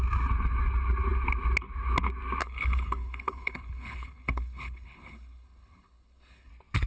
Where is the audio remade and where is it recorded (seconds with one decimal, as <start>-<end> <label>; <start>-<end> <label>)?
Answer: 0.0-2.4 recorded; 2.4-6.5 remade; 6.5-6.9 recorded